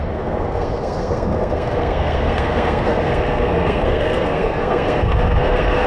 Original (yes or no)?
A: no